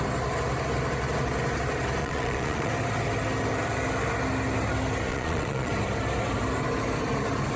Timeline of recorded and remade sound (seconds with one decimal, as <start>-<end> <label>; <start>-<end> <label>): 0.0-2.0 recorded; 2.0-2.7 remade; 2.7-5.1 recorded; 5.1-5.7 remade; 5.7-7.6 recorded